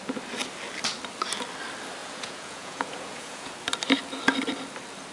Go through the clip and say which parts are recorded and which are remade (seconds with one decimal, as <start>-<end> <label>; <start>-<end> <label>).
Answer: 0.0-2.0 recorded; 2.0-3.5 remade; 3.5-5.1 recorded